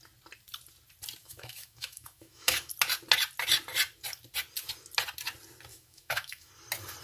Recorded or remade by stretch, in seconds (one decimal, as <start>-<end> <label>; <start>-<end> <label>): 0.0-1.2 recorded; 1.2-2.7 remade; 2.7-5.7 recorded; 5.7-6.5 remade; 6.5-7.0 recorded